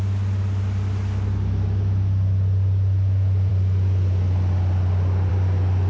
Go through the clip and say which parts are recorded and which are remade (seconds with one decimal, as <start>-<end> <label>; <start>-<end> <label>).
0.0-5.9 recorded